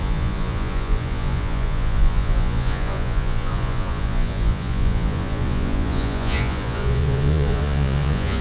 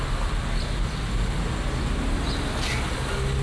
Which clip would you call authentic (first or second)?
second